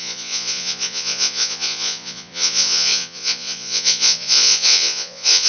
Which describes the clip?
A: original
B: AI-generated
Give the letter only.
B